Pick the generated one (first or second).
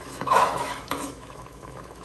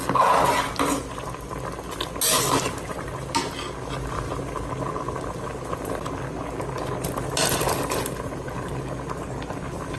first